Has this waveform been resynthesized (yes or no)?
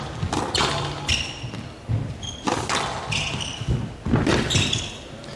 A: no